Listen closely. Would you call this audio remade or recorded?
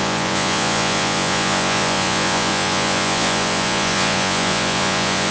remade